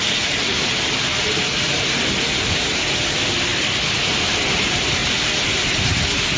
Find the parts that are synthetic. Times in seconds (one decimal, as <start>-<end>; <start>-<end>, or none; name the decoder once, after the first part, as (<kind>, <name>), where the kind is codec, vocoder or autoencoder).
3.5-4.0 (vocoder, BigVGAN v2)